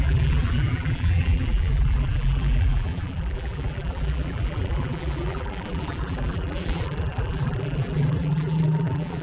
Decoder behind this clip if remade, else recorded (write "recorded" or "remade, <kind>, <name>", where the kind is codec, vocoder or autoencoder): remade, vocoder, BigVGAN v2